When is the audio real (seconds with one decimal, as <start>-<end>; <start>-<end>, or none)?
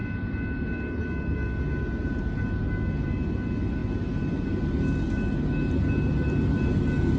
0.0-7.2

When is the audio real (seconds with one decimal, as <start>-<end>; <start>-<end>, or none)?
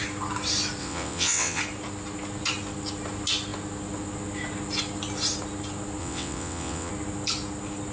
0.0-0.8; 1.6-6.0; 6.9-7.9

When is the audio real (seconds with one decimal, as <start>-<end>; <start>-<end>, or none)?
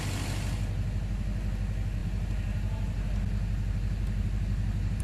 0.0-5.0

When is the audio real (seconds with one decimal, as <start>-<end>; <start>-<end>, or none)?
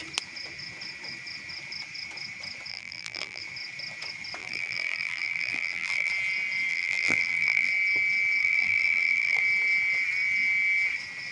0.0-2.7; 3.4-4.4; 6.1-6.7; 7.7-8.4; 9.4-11.3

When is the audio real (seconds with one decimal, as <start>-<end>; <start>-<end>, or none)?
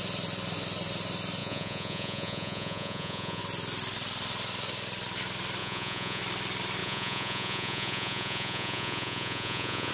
0.0-1.4; 3.4-5.6; 6.2-6.8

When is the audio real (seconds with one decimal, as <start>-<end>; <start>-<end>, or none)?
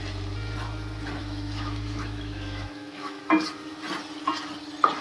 0.0-1.2; 3.2-5.0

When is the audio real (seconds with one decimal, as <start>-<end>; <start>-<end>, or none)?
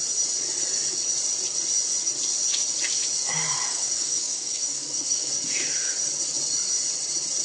0.0-3.7; 5.3-7.4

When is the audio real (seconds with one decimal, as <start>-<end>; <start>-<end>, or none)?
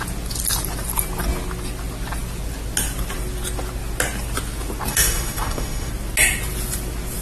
0.0-4.9; 5.9-7.2